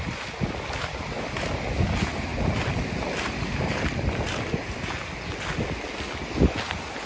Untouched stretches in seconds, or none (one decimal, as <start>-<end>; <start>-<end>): 0.0-7.1